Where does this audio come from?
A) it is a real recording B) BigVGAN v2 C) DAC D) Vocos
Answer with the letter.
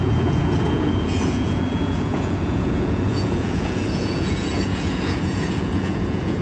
D